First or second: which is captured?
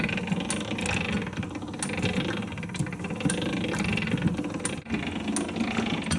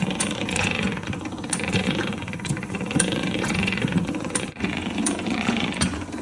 first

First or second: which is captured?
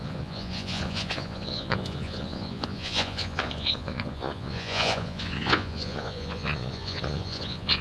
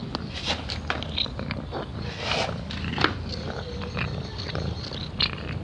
second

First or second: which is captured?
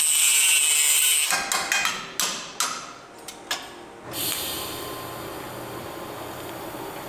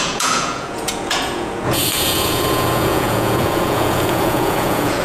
first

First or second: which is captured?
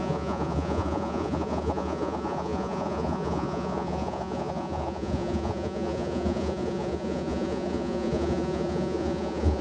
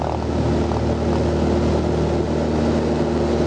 second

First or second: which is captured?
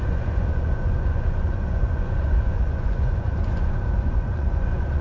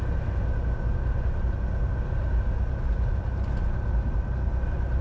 second